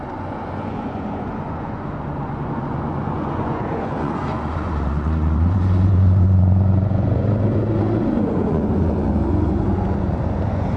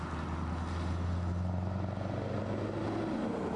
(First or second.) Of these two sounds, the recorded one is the second